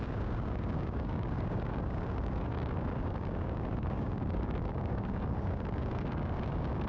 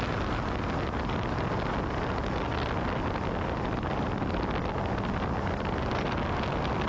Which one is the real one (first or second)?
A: second